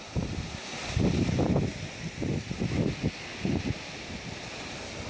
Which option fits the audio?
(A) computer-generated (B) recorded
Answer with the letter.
B